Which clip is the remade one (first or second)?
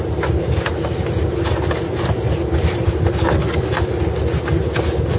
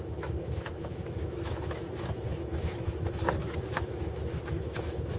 second